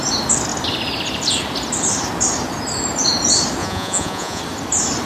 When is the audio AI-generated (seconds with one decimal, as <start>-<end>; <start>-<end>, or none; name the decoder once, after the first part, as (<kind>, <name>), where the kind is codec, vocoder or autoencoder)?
3.6-4.4 (vocoder, Vocos)